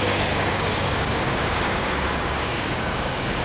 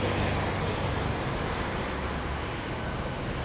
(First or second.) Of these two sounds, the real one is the second